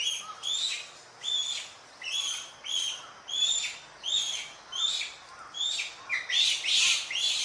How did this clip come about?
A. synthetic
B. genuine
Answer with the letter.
B